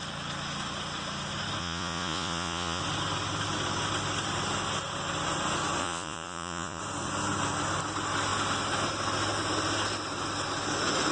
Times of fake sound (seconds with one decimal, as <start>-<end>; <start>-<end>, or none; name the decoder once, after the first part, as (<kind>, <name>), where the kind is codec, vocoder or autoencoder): 1.6-2.8 (vocoder, Vocos); 5.8-6.8